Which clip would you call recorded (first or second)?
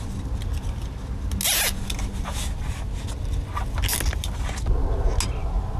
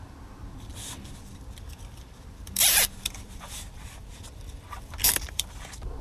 first